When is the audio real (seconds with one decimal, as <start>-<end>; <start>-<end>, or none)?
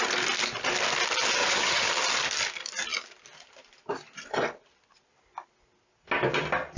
0.0-1.4; 1.9-6.8